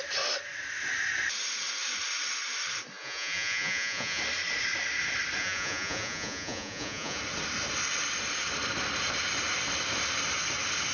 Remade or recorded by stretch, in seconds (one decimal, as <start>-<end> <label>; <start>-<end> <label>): 0.0-3.0 recorded; 3.0-4.2 remade; 4.2-5.4 recorded; 5.4-7.2 remade; 7.2-10.9 recorded